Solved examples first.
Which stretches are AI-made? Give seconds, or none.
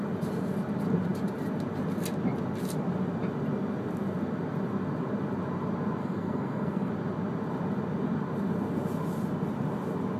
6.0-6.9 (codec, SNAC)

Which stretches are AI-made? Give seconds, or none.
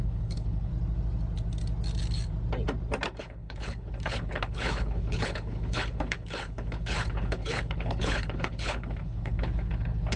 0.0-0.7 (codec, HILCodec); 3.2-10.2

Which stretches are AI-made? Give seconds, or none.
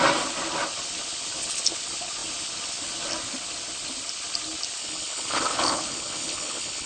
4.8-6.9 (codec, HILCodec)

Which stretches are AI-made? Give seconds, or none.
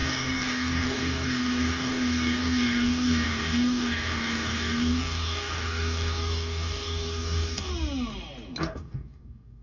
0.0-7.7 (codec, DAC); 8.6-9.6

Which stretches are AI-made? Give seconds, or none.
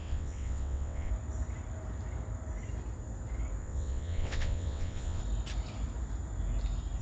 0.0-1.1 (vocoder, WaveNeXt); 3.6-5.2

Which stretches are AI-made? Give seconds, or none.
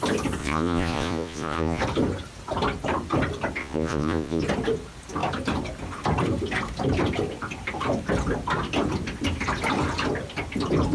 0.4-1.8 (vocoder, Vocos); 3.6-4.4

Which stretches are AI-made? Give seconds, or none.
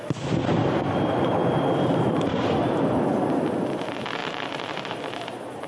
0.6-3.2 (vocoder, BigVGAN v2); 4.2-5.2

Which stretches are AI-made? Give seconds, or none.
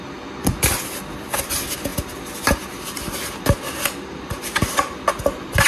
none